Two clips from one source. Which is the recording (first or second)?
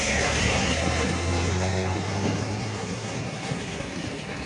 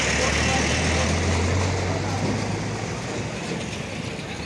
second